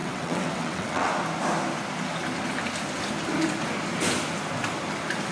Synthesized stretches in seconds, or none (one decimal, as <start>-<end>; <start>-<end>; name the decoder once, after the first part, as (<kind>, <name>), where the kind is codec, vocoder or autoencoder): 0.0-1.1 (vocoder, WaveNeXt)